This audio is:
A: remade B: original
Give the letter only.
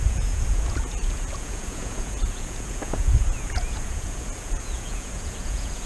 A